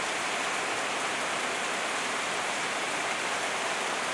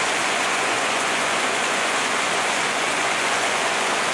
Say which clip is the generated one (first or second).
second